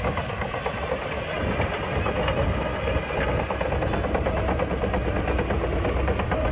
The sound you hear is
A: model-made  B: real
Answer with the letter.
B